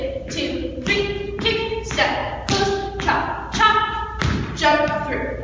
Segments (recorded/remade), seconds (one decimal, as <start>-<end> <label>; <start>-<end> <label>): 0.0-2.2 remade; 2.2-3.9 recorded; 3.9-5.4 remade